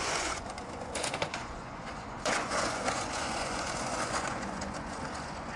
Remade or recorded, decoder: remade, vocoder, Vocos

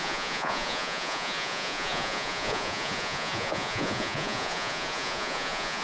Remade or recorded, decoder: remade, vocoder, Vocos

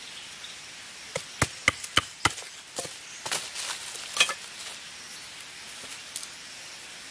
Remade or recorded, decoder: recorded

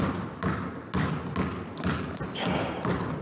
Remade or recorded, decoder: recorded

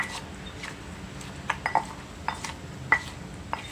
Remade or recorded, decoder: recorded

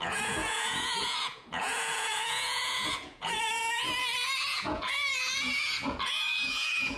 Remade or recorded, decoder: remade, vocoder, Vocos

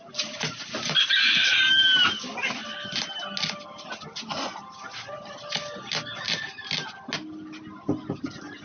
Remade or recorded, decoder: recorded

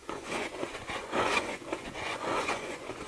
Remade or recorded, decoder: remade, vocoder, Vocos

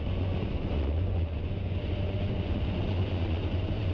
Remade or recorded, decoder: remade, vocoder, Vocos